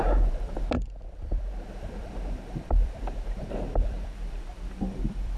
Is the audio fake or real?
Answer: fake